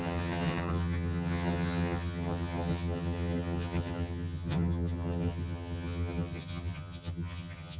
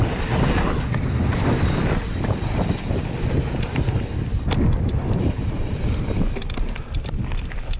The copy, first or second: first